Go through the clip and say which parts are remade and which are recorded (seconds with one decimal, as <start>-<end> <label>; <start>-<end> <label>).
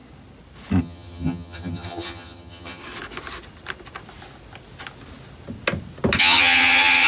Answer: 0.0-0.8 recorded; 0.8-2.8 remade; 2.8-6.2 recorded; 6.2-7.1 remade